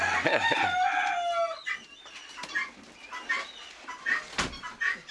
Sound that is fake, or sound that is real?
real